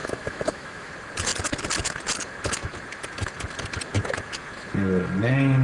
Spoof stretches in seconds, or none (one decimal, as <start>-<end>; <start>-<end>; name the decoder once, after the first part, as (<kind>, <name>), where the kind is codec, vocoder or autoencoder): 0.0-0.9 (autoencoder, DAC-VAE)